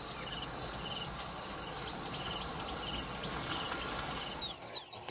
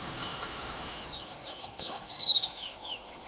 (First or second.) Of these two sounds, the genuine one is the first